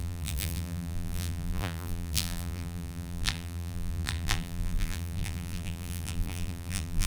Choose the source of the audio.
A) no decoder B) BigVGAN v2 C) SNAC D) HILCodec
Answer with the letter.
B